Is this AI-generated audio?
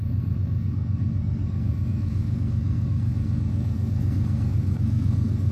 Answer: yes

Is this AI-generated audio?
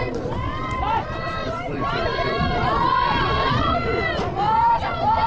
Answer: yes